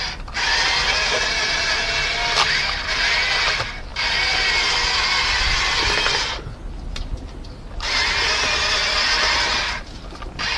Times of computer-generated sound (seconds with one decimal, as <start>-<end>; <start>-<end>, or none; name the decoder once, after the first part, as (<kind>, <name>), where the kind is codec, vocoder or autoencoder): none